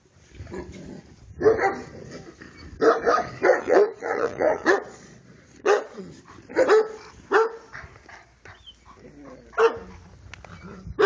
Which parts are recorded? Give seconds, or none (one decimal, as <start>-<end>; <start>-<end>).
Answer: 0.0-3.6; 6.0-11.1